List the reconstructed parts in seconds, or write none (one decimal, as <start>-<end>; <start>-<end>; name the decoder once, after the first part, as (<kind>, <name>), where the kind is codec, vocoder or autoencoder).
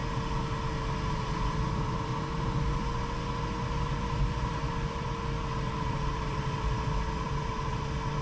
1.5-2.1 (vocoder, BigVGAN v2); 3.6-8.2